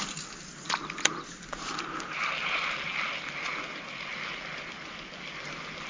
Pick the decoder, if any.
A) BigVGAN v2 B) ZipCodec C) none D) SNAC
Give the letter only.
C